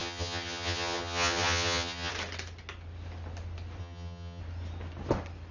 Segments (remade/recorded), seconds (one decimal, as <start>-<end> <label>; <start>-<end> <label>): 0.0-2.1 remade; 2.1-3.8 recorded; 3.8-4.4 remade; 4.4-5.5 recorded